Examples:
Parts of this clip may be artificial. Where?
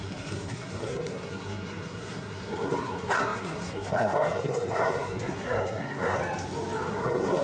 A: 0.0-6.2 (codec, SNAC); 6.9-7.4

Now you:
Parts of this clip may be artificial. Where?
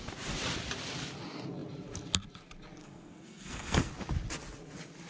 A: 2.8-3.9 (codec, SNAC)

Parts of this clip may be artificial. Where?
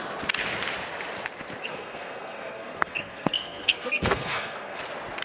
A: 1.7-4.8 (codec, SNAC)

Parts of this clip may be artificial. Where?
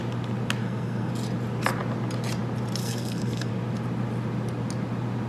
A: 0.6-1.1 (codec, SNAC); 2.8-3.5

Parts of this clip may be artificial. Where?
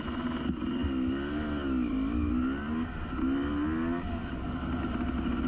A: none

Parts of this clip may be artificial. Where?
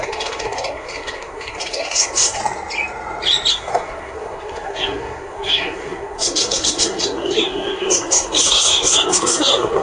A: 0.0-2.4 (codec, SNAC); 3.5-9.8